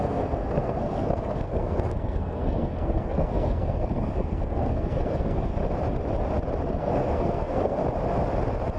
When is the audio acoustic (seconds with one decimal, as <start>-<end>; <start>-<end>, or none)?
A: 5.5-6.7; 7.8-8.8